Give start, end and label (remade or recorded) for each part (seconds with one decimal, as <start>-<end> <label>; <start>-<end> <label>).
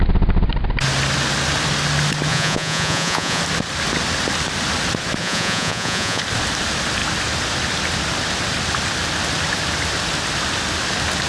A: 0.0-2.3 recorded; 2.3-3.4 remade; 3.4-5.2 recorded; 5.2-6.2 remade; 6.2-11.3 recorded